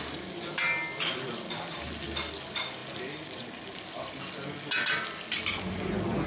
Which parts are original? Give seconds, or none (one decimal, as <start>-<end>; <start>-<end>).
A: 0.0-6.3